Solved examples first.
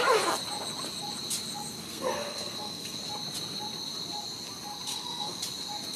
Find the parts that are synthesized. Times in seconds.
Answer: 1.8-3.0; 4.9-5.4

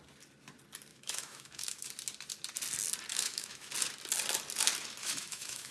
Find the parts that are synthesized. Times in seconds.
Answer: 0.9-1.9; 3.1-3.7; 5.0-5.7

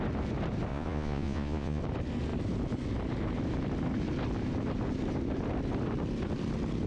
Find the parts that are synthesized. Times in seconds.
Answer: 0.7-1.8